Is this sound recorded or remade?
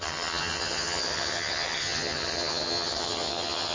remade